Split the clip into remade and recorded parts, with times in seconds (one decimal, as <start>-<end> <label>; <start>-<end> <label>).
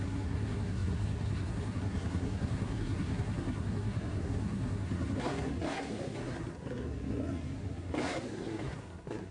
0.0-9.3 remade